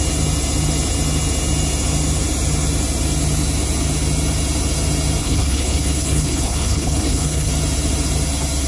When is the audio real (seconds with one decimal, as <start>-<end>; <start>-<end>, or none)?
0.0-5.2; 7.5-8.7